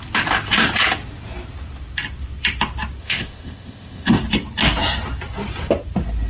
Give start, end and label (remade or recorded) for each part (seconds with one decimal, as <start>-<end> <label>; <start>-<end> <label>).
0.0-3.0 recorded; 3.0-4.2 remade; 4.2-6.3 recorded